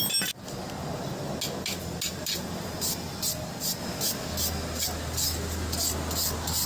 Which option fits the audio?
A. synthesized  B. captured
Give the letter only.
B